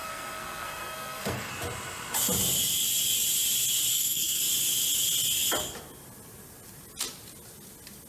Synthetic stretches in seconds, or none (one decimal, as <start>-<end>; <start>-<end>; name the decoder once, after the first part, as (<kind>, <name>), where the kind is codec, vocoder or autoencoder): 0.0-1.5 (codec, SNAC); 3.9-4.4